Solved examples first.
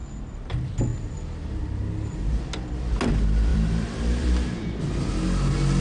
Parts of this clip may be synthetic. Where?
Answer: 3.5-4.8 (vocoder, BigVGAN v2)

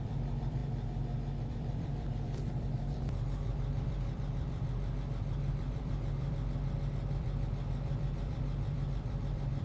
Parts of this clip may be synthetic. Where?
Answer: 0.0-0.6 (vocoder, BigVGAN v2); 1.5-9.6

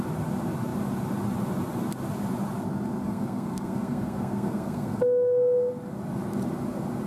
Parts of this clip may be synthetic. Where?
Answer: 3.1-5.7 (codec, SNAC)